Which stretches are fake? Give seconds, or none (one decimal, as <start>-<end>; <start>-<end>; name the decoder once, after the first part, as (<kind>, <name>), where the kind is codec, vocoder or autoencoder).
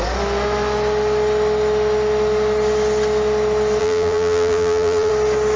3.8-5.1 (vocoder, BigVGAN v2)